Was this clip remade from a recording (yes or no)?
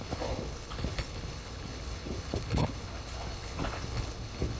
yes